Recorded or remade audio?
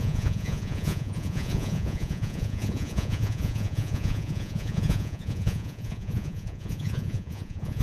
remade